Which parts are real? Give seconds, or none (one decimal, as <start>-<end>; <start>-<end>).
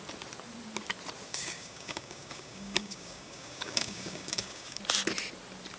0.0-1.3; 4.8-5.8